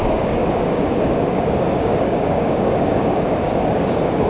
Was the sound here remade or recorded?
remade